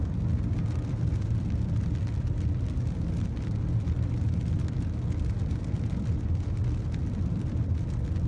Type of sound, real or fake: real